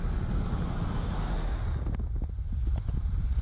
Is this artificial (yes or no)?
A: no